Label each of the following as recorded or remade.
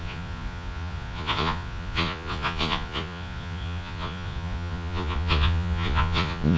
remade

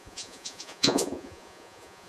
remade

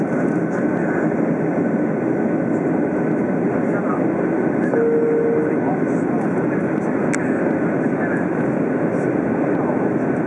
recorded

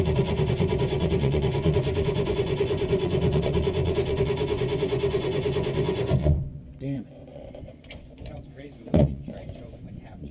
remade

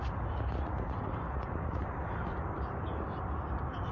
recorded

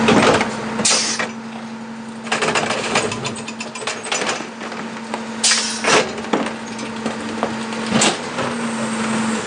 recorded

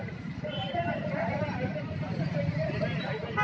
recorded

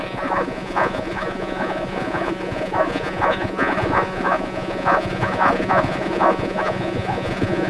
remade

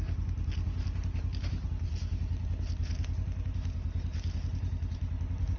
recorded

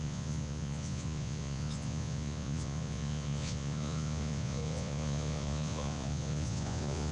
remade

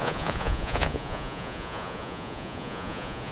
remade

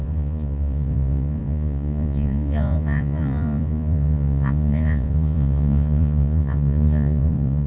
remade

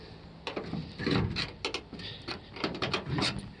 recorded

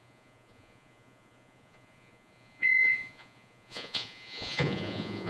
remade